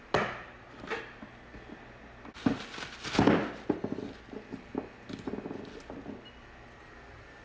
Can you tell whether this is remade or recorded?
recorded